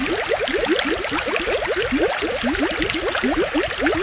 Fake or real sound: real